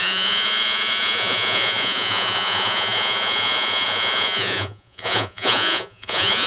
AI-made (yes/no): yes